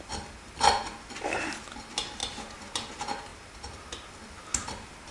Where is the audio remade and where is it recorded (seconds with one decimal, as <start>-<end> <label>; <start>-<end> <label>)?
0.0-5.1 recorded